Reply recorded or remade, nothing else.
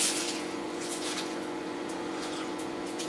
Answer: remade